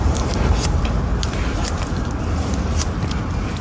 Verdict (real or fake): fake